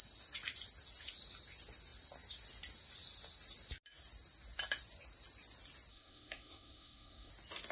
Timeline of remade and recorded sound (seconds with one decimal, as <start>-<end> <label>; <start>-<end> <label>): 0.0-5.9 recorded; 5.9-7.3 remade; 7.3-7.7 recorded